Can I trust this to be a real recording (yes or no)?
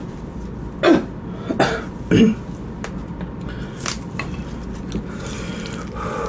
yes